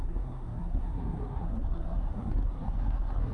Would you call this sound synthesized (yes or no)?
yes